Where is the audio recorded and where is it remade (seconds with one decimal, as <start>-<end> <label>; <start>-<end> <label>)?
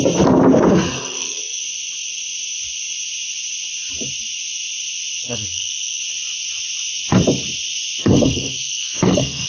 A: 0.0-0.7 recorded; 0.7-1.6 remade; 1.6-5.2 recorded; 5.2-6.0 remade; 6.0-8.0 recorded; 8.0-9.5 remade